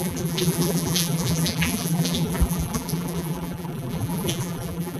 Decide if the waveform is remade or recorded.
remade